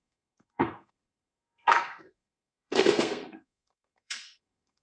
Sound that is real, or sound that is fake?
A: fake